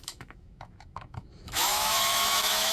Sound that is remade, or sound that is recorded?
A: remade